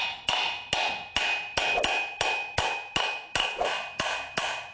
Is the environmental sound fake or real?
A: real